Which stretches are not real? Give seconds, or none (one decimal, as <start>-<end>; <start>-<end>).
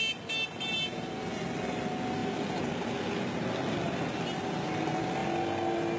none